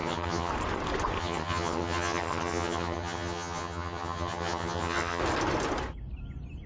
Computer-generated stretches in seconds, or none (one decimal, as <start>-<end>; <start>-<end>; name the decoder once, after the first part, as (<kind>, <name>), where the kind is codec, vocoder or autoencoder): 0.0-0.5 (vocoder, HiFi-GAN); 1.2-5.2